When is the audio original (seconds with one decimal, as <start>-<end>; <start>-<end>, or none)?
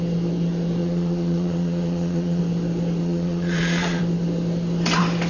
0.0-0.8; 2.4-3.0; 4.0-5.3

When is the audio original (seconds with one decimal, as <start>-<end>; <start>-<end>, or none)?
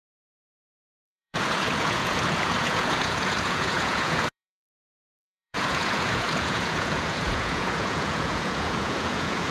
none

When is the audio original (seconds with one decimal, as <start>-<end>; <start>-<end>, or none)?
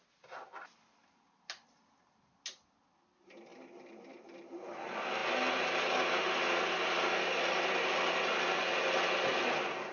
0.0-9.9